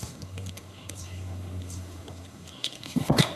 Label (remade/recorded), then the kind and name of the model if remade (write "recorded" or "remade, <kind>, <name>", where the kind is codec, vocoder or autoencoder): remade, codec, SNAC